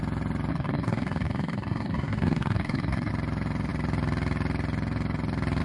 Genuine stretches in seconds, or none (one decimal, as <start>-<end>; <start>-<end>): 0.0-0.5; 3.1-5.6